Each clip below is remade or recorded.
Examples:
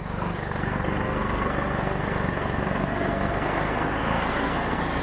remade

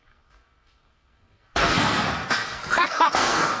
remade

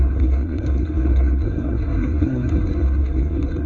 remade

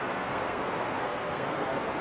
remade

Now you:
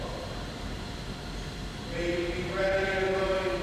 recorded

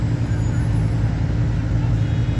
recorded